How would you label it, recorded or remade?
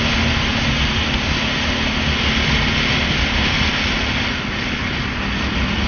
recorded